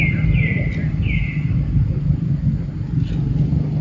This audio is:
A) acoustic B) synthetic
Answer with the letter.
A